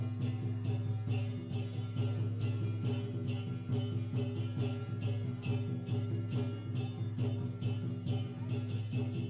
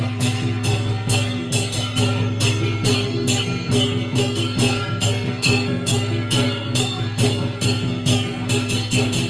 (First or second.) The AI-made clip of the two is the second